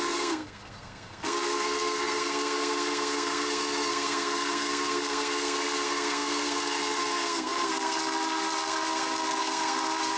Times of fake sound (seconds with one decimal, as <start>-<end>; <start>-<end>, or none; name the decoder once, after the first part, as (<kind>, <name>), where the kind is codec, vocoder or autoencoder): 0.0-10.2 (codec, SNAC)